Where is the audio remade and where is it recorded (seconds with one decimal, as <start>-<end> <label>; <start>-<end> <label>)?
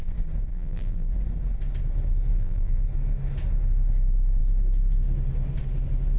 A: 0.0-0.5 recorded; 0.5-1.1 remade; 1.1-2.3 recorded; 2.3-2.8 remade; 2.8-6.2 recorded